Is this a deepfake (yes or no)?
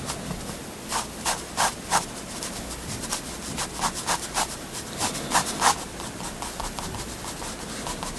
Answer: no